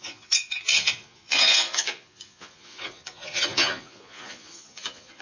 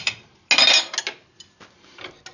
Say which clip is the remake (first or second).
first